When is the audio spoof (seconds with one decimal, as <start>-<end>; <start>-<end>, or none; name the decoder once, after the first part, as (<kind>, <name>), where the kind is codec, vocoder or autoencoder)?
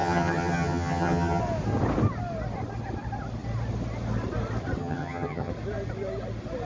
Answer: 0.0-1.4 (vocoder, HiFi-GAN); 4.8-5.5